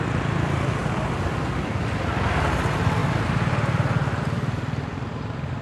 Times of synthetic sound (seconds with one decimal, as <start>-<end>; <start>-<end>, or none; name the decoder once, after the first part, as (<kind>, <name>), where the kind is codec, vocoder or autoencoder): none